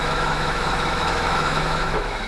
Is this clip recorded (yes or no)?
no